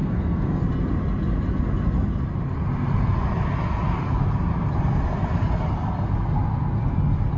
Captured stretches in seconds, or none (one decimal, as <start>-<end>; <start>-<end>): 0.6-7.4